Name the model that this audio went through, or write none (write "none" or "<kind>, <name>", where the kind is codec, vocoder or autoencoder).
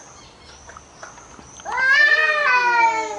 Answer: none